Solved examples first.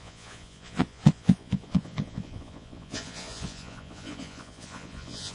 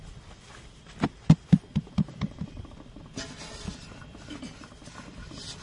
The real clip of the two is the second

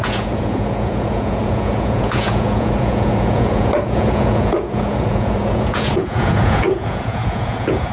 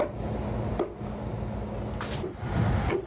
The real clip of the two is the second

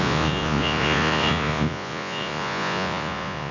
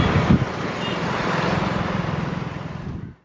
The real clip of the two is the second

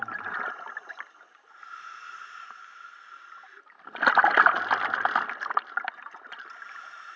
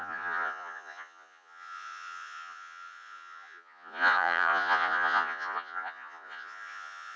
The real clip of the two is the first